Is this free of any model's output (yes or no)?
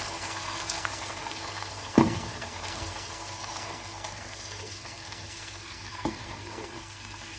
no